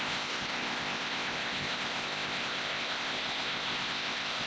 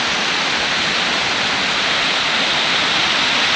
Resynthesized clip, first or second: first